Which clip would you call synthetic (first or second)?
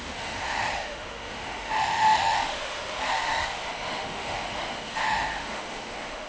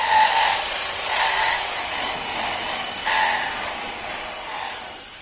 first